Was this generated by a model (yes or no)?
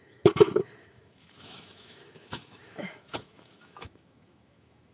yes